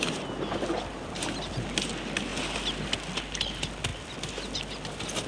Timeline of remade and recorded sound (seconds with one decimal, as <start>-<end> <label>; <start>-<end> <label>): 0.0-5.3 recorded